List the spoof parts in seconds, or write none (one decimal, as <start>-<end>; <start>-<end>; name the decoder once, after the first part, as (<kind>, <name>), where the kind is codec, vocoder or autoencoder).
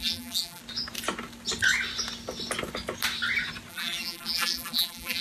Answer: 0.0-0.6 (vocoder, BigVGAN v2); 3.7-5.2